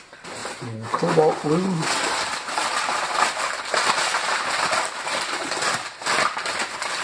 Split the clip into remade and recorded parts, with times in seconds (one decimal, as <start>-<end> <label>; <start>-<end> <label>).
0.0-7.0 recorded